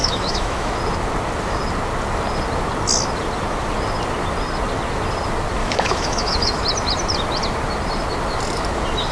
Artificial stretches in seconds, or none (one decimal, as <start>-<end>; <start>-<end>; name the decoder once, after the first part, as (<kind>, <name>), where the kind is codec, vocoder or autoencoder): 0.0-0.7 (autoencoder, DAC-VAE); 5.6-6.6